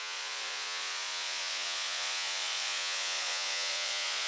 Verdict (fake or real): fake